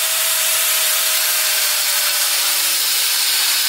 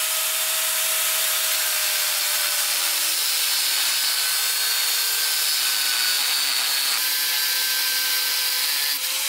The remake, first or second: first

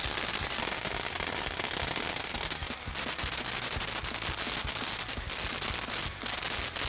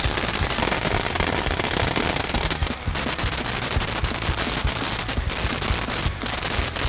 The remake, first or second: second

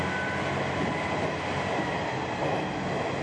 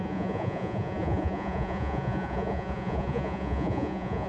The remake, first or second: second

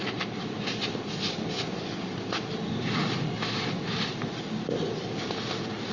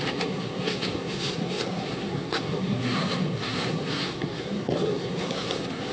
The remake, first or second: second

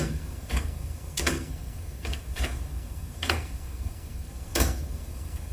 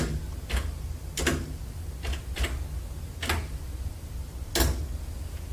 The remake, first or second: first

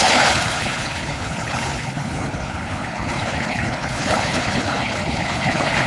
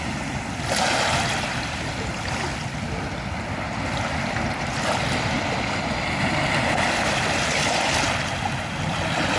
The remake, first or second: first